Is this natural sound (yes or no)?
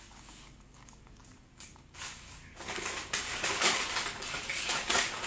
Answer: no